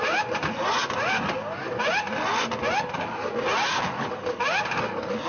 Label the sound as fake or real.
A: real